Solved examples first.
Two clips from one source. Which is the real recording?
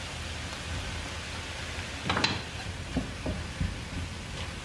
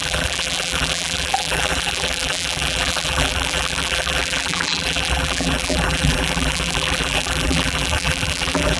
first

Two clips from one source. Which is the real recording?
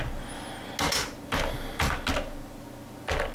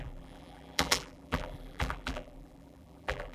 first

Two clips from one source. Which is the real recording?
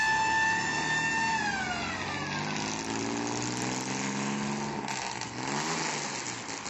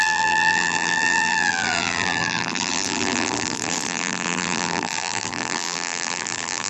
first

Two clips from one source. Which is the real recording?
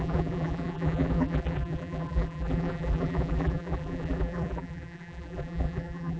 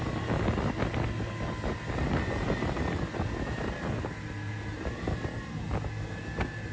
second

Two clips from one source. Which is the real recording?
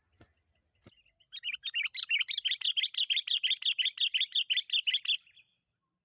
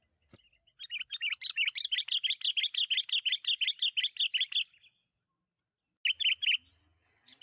second